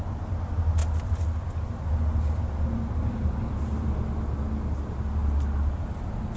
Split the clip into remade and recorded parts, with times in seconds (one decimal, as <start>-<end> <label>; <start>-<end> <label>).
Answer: 0.0-6.4 recorded